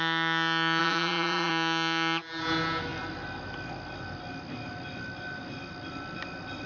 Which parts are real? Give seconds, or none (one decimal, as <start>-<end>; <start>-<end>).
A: 0.0-0.8; 1.5-6.7